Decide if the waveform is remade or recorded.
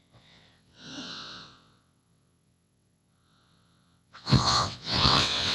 remade